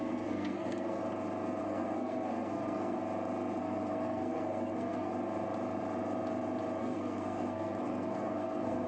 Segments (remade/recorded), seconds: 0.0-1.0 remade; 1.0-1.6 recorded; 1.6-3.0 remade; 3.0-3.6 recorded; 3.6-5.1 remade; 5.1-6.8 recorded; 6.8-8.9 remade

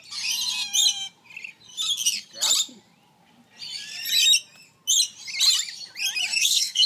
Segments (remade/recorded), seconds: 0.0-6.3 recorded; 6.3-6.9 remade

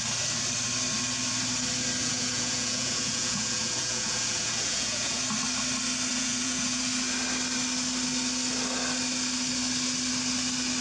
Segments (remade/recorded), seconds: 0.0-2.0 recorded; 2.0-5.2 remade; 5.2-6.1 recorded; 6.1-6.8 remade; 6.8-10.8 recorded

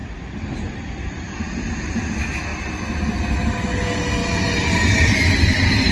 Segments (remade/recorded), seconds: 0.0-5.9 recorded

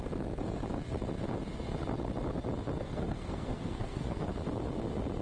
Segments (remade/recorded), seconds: 0.0-2.8 recorded; 2.8-4.2 remade; 4.2-5.2 recorded